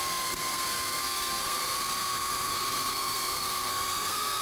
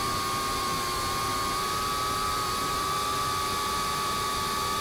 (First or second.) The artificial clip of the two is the first